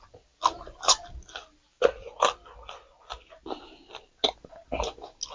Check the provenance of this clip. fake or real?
real